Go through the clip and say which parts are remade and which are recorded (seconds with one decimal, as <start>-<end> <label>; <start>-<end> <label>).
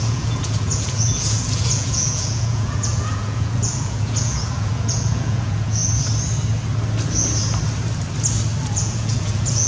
0.0-5.8 remade; 5.8-8.7 recorded; 8.7-9.7 remade